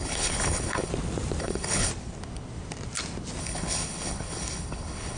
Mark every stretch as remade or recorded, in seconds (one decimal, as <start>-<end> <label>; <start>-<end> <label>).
0.0-0.9 remade; 0.9-1.4 recorded; 1.4-1.9 remade; 1.9-3.4 recorded; 3.4-5.2 remade